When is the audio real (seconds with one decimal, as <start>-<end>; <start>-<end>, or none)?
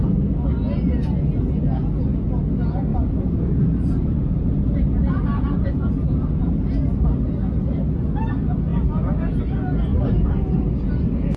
0.0-2.9; 6.5-8.7; 9.4-9.9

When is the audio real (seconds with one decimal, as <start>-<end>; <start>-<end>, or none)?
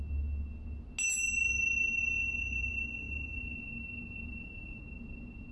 0.0-2.0; 4.8-5.5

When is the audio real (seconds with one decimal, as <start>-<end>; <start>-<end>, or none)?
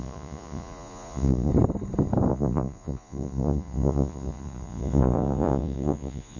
1.5-2.3